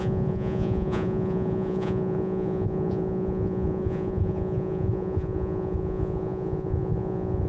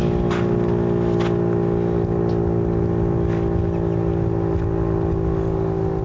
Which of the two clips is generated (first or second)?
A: first